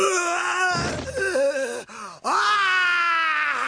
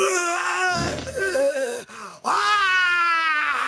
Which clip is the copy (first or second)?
second